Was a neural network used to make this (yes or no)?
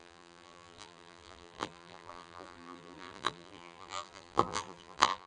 yes